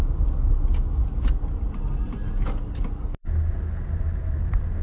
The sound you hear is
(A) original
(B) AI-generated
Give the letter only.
A